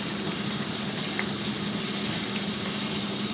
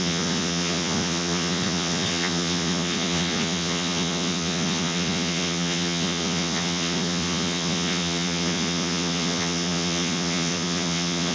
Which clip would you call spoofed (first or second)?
second